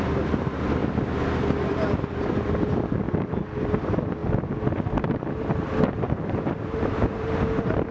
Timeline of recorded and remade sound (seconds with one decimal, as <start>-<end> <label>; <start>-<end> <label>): 0.0-0.8 remade; 0.8-1.4 recorded; 1.4-4.2 remade; 4.2-4.8 recorded; 4.8-7.9 remade